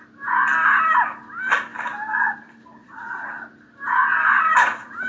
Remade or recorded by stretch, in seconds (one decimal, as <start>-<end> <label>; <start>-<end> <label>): 0.0-2.8 recorded; 2.8-3.3 remade; 3.3-4.0 recorded; 4.0-5.1 remade